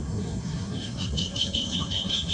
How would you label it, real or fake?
fake